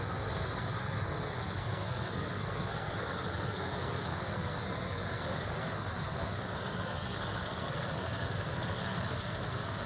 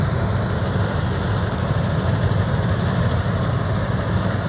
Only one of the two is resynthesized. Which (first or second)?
first